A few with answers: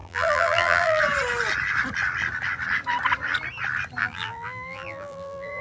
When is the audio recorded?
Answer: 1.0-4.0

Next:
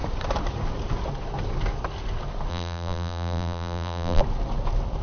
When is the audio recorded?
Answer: 0.0-2.5; 4.2-5.0

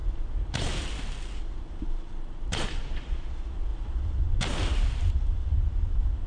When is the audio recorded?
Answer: 0.0-6.3

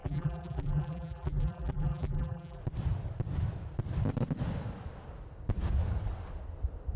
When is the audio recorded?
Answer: 2.6-7.0

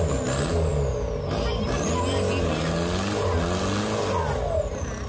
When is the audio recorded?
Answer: 0.0-5.1

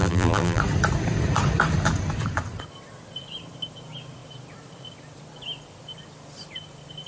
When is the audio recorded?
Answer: 0.6-7.1

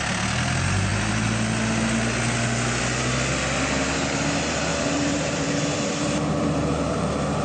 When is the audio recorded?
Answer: 0.0-4.7; 6.9-7.4